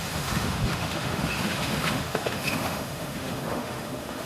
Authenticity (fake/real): fake